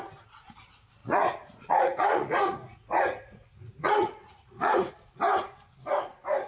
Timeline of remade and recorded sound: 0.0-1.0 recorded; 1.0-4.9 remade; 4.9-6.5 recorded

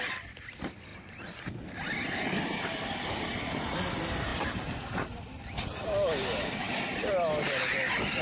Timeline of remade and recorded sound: 0.0-8.2 recorded

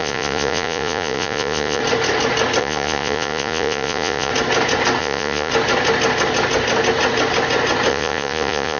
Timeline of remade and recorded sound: 0.0-1.8 remade; 1.8-2.6 recorded; 2.6-4.3 remade; 4.3-5.0 recorded; 5.0-5.5 remade; 5.5-7.9 recorded; 7.9-8.8 remade